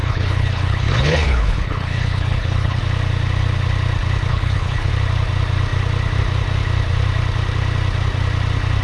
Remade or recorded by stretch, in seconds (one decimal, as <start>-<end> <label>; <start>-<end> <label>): 0.0-2.8 remade; 2.8-4.3 recorded; 4.3-4.9 remade; 4.9-8.8 recorded